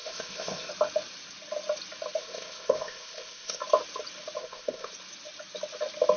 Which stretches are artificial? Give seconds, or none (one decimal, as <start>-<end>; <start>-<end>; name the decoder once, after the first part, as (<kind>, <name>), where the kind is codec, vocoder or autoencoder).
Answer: 0.0-0.7 (codec, ZipCodec); 2.2-3.6; 4.4-4.9